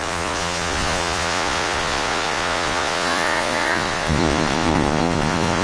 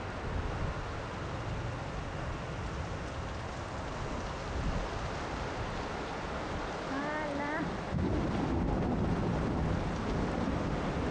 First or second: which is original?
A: second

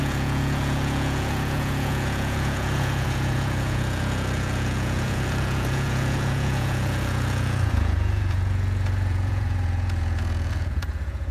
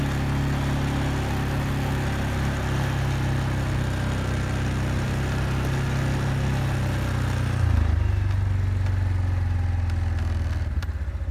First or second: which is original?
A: second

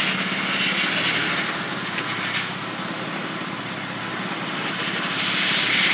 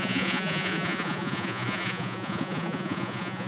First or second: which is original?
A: first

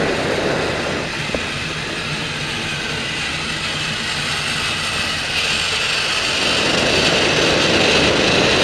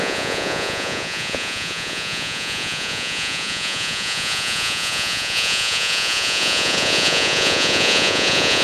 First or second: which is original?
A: first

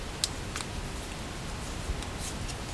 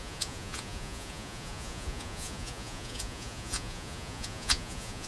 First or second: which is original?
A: first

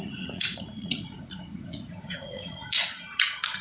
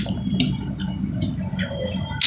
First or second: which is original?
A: second